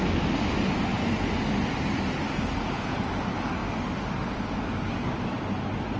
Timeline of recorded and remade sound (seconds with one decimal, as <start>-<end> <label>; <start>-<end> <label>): 0.0-6.0 recorded